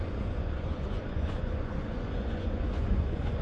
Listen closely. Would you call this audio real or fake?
fake